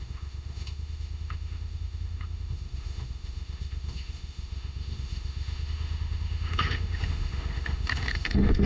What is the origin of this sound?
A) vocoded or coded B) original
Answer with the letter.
A